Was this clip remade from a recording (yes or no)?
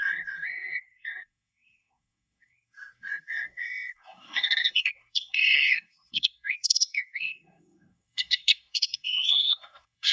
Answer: yes